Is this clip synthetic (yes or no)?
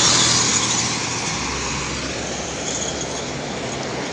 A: no